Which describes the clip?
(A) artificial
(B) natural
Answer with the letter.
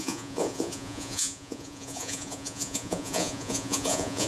A